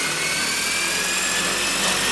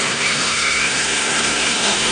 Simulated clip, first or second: second